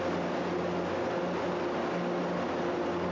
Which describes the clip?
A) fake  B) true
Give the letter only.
B